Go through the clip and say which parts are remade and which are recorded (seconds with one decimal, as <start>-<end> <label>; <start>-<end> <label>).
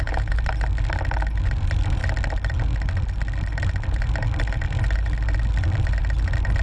0.0-6.6 recorded